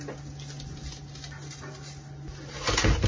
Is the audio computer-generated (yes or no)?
no